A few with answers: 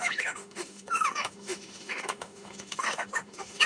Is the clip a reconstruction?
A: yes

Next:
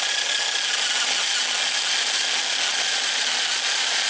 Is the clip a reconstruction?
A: no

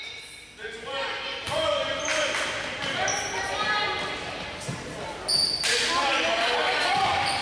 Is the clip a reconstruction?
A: no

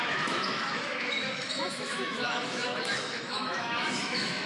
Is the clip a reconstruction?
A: yes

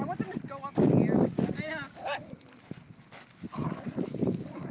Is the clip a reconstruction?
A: no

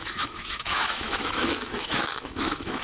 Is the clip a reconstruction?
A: yes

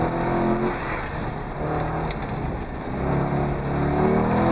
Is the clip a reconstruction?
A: no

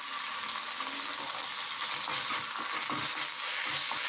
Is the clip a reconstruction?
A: no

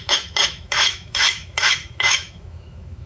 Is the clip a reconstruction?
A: yes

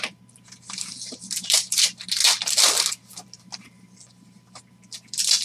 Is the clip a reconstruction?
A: no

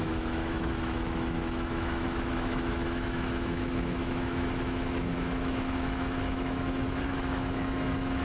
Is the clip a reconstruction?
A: yes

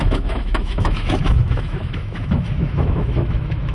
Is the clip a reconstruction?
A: yes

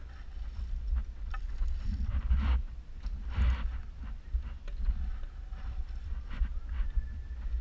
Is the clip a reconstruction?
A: no